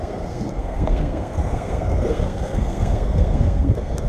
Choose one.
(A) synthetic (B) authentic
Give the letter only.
A